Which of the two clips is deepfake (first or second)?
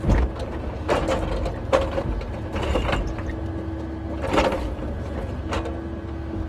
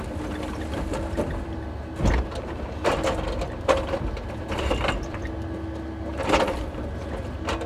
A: second